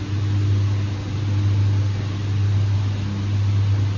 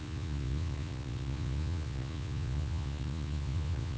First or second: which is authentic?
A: first